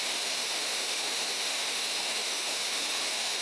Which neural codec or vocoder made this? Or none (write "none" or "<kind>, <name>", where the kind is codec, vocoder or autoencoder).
autoencoder, DAC-VAE